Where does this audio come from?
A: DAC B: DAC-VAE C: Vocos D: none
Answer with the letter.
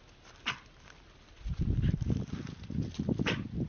D